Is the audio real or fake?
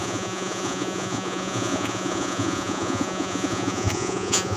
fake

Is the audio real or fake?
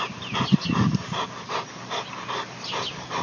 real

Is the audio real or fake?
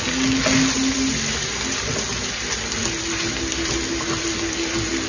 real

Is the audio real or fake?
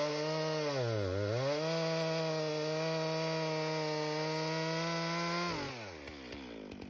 real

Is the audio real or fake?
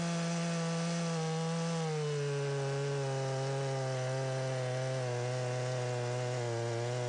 real